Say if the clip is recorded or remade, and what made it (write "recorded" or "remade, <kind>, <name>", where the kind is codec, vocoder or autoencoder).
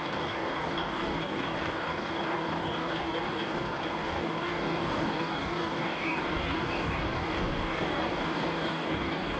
remade, codec, DAC